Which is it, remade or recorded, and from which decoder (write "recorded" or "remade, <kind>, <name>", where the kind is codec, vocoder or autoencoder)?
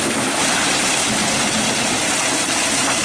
recorded